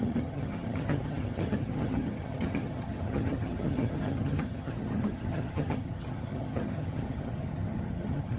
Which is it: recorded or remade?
remade